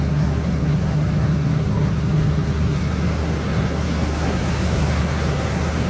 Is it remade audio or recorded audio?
remade